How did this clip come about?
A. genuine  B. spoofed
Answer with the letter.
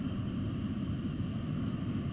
A